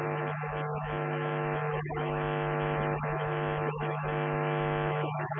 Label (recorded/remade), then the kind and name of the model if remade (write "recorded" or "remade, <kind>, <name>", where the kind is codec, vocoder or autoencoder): remade, autoencoder, DAC-VAE